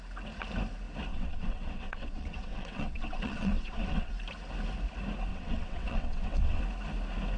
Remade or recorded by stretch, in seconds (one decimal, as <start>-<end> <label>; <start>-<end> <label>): 0.0-1.1 recorded; 1.1-4.1 remade; 4.1-5.3 recorded; 5.3-6.6 remade; 6.6-7.4 recorded